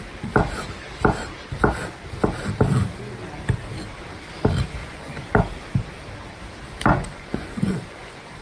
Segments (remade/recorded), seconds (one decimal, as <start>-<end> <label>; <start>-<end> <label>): 0.0-4.8 recorded; 4.8-5.3 remade; 5.3-6.9 recorded; 6.9-8.4 remade